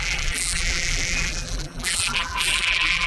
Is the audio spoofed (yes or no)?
yes